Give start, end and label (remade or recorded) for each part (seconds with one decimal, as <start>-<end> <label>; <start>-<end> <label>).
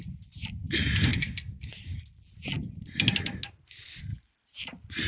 0.0-4.1 recorded; 4.1-5.1 remade